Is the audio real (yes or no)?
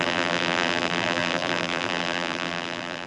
no